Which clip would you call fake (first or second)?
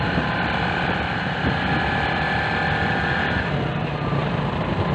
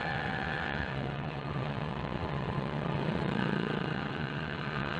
second